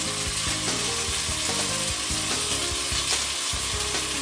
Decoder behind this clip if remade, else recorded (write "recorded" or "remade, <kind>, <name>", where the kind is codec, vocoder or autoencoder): recorded